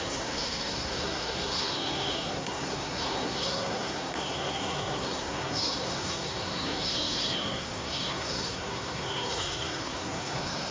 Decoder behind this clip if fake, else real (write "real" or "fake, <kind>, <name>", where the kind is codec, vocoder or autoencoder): fake, codec, SNAC